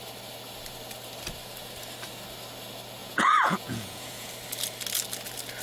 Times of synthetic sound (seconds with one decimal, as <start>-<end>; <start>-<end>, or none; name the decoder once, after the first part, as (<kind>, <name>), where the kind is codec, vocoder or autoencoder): 3.0-4.3 (vocoder, Vocos)